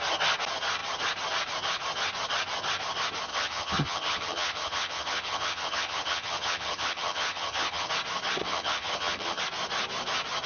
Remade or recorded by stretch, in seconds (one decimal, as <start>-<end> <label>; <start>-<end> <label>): 0.0-3.3 recorded; 3.3-7.9 remade; 7.9-8.4 recorded; 8.4-9.4 remade; 9.4-10.5 recorded